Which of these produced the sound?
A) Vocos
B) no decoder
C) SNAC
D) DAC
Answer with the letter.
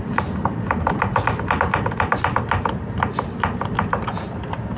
B